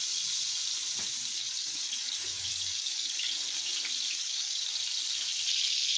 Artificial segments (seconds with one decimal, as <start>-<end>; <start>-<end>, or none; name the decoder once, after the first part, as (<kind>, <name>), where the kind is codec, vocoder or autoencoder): 1.4-3.3 (codec, DAC); 4.1-4.6